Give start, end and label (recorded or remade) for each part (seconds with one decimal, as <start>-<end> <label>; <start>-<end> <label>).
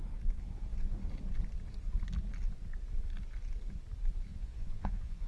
0.0-4.3 recorded; 4.3-5.3 remade